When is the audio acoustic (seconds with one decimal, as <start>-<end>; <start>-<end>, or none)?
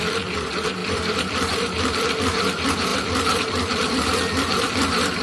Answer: none